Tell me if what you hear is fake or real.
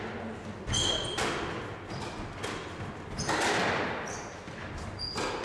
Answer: real